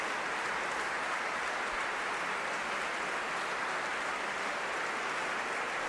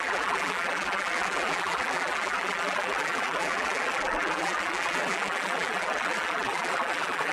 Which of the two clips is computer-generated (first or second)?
second